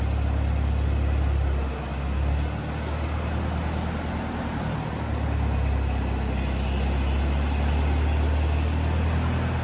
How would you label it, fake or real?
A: real